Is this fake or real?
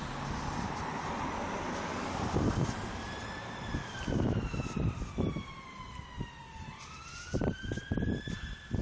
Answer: real